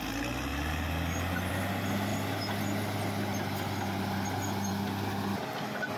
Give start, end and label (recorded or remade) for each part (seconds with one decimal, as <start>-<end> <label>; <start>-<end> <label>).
0.0-6.0 recorded